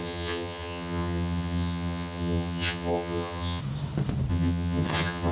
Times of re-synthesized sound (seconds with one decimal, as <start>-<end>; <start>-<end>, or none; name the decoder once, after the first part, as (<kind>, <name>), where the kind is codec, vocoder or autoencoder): 0.0-3.6 (vocoder, HiFi-GAN); 4.3-5.3